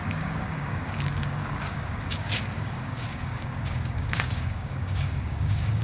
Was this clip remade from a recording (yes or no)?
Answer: yes